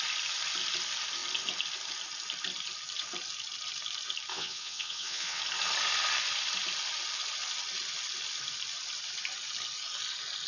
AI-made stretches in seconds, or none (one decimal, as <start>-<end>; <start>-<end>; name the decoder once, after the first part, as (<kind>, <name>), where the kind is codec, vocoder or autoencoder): 4.3-5.4 (vocoder, WaveNeXt)